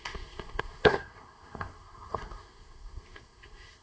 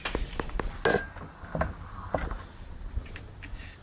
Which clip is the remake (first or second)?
first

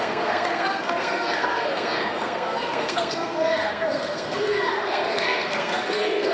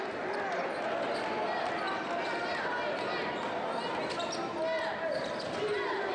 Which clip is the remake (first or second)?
first